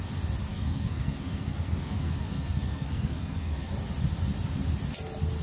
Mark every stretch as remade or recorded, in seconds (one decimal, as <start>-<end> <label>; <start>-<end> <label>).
0.0-0.5 recorded; 0.5-3.7 remade; 3.7-5.4 recorded